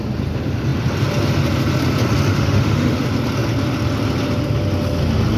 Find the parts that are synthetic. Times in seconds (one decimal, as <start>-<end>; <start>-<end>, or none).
2.3-3.0